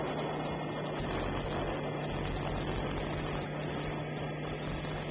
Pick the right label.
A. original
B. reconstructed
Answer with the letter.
A